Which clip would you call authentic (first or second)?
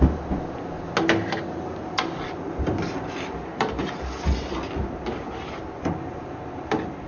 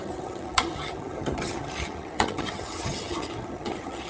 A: first